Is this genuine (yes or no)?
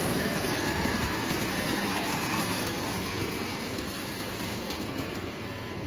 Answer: no